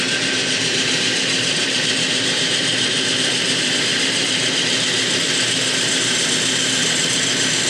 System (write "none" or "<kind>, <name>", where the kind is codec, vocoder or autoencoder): vocoder, BigVGAN v2